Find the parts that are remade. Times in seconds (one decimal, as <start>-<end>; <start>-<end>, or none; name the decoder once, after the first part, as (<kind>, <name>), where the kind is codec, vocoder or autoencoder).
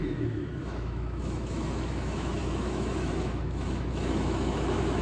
0.0-5.0 (autoencoder, DAC-VAE)